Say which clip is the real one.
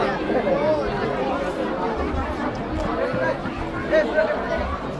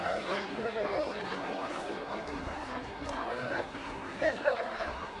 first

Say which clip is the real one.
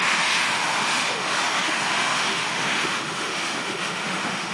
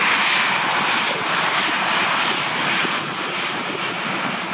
second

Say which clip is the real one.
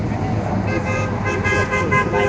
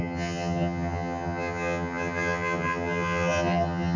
first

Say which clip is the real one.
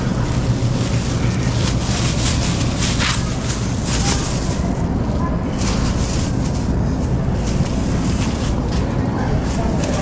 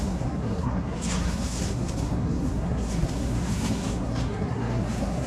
first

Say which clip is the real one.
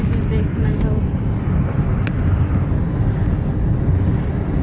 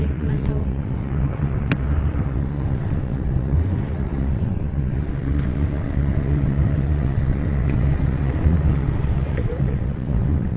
first